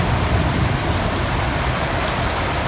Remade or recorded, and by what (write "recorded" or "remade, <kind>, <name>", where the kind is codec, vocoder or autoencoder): recorded